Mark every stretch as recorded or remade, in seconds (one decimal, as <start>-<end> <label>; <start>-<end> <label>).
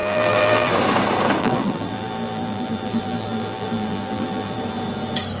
0.0-0.7 remade; 0.7-1.4 recorded; 1.4-4.6 remade; 4.6-5.4 recorded